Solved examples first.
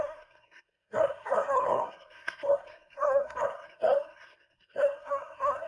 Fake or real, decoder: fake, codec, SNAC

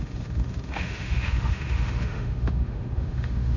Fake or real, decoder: fake, autoencoder, DAC-VAE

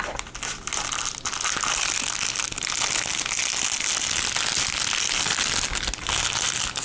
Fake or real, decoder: real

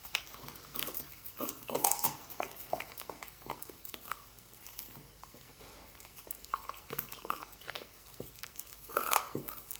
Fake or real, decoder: fake, codec, SNAC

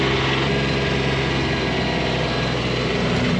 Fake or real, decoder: real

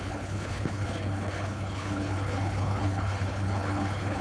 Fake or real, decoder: fake, codec, HILCodec